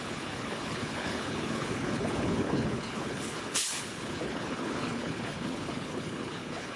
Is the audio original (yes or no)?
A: no